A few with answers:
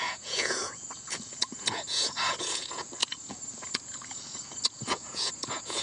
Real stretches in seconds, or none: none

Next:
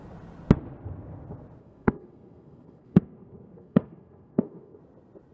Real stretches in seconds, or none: 0.0-1.6; 4.8-5.3

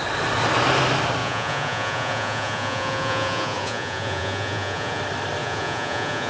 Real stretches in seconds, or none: 0.0-1.2; 5.0-5.4

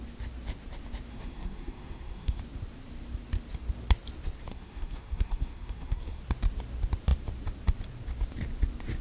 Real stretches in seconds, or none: 0.0-1.1; 2.4-4.5; 6.2-9.0

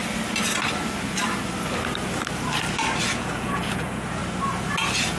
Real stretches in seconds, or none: 0.0-3.1; 4.2-5.2

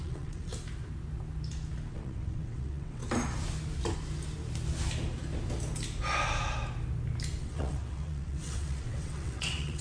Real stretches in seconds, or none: 0.5-1.9; 3.0-7.4

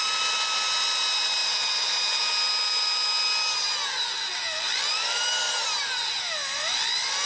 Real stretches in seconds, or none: 0.0-7.3